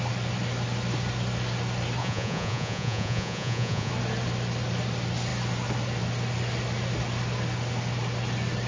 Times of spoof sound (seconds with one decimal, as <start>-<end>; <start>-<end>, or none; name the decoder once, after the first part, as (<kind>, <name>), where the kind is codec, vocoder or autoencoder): 2.0-3.9 (vocoder, Vocos)